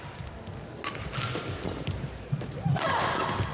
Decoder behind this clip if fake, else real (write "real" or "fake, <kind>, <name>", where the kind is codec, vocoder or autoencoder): real